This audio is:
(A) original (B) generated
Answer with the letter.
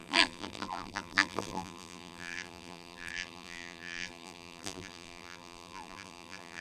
B